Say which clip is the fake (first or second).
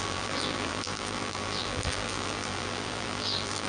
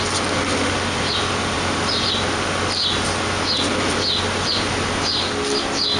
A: first